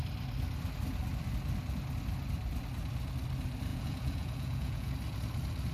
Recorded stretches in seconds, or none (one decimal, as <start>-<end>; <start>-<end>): 0.0-3.7; 4.9-5.7